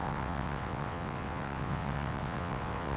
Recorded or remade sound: remade